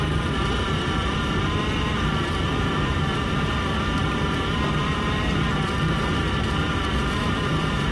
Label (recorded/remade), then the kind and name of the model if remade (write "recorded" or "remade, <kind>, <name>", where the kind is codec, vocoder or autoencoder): remade, vocoder, BigVGAN v2